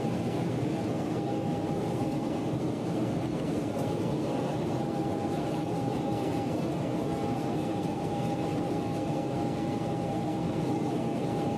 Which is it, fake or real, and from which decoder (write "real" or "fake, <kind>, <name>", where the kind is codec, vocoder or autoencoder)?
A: fake, codec, SNAC